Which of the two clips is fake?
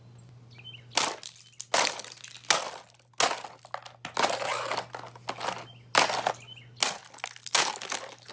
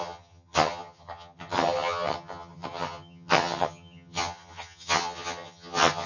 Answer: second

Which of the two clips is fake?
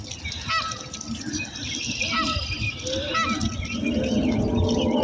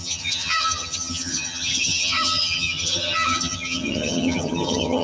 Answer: second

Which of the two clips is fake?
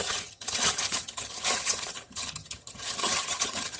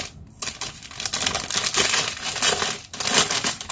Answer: first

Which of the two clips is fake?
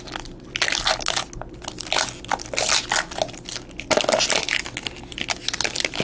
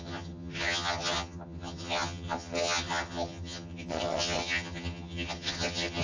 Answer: second